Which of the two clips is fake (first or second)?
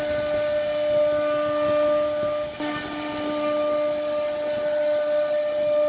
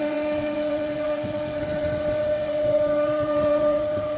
second